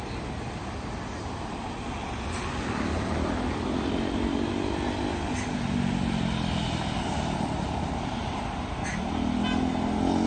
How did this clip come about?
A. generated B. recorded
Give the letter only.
B